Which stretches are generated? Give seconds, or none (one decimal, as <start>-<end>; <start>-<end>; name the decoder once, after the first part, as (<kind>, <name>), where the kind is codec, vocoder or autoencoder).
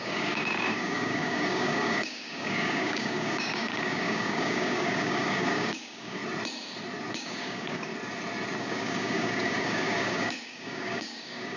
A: 0.0-6.2 (codec, DAC); 7.1-7.9; 8.6-11.6